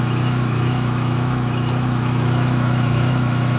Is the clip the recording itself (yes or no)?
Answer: no